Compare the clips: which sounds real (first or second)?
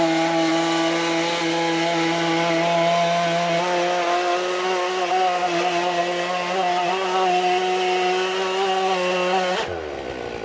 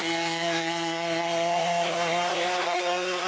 first